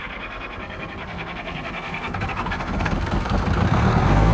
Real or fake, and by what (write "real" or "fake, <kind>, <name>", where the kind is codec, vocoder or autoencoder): fake, codec, SNAC